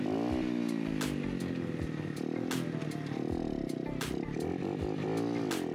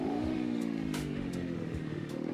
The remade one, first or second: second